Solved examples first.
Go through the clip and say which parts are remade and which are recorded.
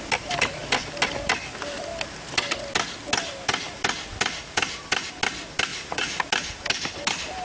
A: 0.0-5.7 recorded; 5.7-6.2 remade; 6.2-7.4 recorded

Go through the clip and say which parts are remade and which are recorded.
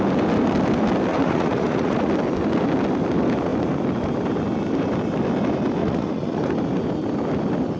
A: 0.0-1.1 recorded; 1.1-2.1 remade; 2.1-5.8 recorded; 5.8-6.5 remade; 6.5-7.8 recorded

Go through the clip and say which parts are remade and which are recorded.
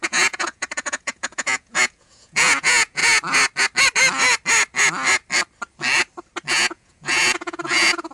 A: 0.0-3.0 remade; 3.0-6.5 recorded; 6.5-8.1 remade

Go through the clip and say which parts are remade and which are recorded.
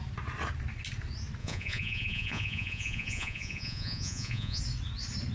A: 0.0-1.4 recorded; 1.4-4.6 remade; 4.6-5.3 recorded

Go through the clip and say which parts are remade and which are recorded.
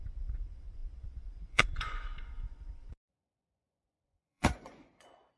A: 0.0-5.4 remade